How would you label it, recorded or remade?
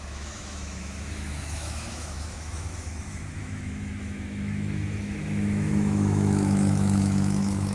remade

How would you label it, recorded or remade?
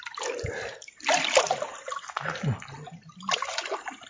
recorded